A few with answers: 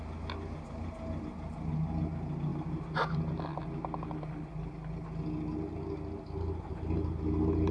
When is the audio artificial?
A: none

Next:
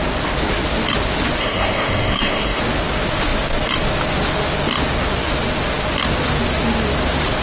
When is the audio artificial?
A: 1.4-2.6 (codec, SNAC)

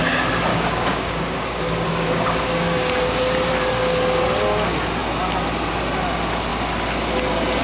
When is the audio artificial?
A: 0.5-3.5 (codec, DAC)